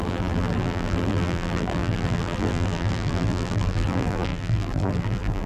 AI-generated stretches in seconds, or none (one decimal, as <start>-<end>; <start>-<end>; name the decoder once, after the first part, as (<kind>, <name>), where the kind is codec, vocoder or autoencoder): 0.0-5.5 (vocoder, BigVGAN v2)